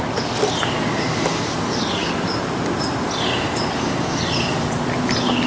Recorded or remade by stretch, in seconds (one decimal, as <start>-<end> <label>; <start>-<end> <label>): 0.0-5.5 recorded